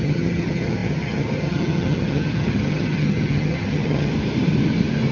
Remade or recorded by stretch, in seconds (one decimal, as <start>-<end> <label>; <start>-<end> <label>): 0.0-4.1 remade; 4.1-5.1 recorded